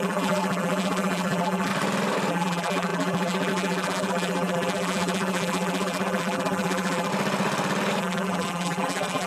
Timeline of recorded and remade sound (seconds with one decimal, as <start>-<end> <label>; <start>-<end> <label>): 0.0-1.7 remade; 1.7-2.3 recorded; 2.3-7.1 remade; 7.1-8.0 recorded; 8.0-9.3 remade